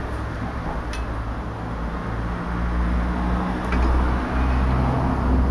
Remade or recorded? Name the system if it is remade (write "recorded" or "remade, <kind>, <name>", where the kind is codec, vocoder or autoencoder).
recorded